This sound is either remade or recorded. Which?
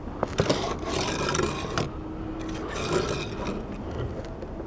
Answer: recorded